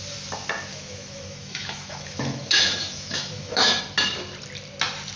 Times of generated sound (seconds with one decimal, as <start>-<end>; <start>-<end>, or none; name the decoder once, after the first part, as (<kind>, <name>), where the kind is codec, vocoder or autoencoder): 0.7-3.8 (autoencoder, DAC-VAE)